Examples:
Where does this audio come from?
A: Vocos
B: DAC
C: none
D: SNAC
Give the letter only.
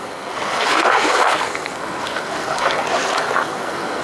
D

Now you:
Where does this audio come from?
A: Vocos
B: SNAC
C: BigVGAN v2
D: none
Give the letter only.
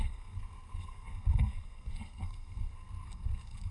B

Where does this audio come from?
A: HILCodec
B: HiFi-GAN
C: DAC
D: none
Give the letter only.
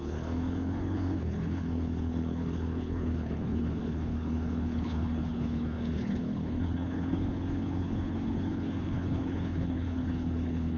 A